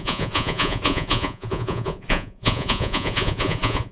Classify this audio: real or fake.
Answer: fake